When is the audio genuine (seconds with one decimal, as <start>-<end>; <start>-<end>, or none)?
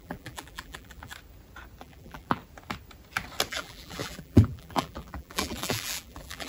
1.1-1.8; 2.4-3.5